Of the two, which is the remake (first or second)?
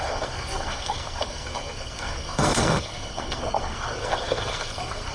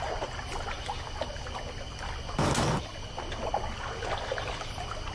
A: first